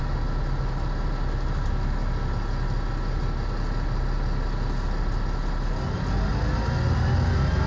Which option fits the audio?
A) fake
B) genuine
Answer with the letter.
B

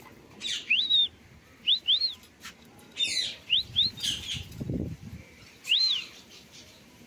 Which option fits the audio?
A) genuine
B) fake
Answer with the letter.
B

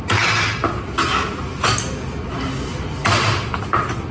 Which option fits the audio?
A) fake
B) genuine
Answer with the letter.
B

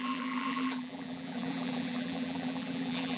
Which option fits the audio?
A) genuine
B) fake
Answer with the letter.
B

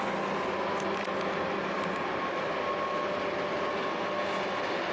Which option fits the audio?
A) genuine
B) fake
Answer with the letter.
A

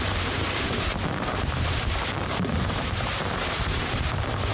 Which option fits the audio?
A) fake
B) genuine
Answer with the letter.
A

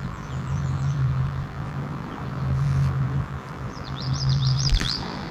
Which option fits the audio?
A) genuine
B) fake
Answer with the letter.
B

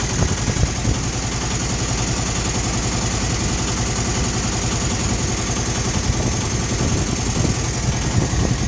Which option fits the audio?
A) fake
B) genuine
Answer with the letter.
B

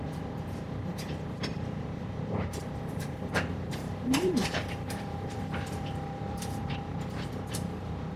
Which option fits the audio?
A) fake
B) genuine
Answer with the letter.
A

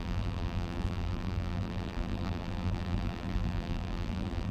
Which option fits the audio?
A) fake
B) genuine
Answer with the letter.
A